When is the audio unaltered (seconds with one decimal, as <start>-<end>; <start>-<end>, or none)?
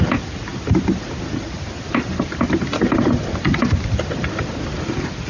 0.0-5.3